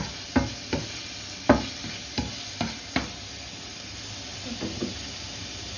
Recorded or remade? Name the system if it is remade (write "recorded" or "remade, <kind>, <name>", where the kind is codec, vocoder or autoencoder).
recorded